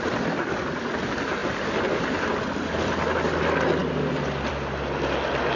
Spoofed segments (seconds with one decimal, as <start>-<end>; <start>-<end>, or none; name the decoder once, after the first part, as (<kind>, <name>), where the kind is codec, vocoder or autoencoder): none